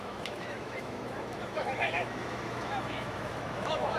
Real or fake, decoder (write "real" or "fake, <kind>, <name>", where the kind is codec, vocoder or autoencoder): fake, autoencoder, DAC-VAE